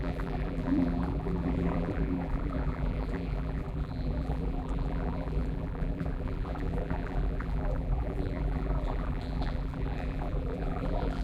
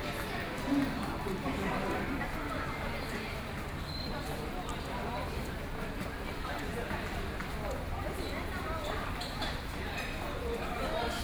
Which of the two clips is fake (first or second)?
first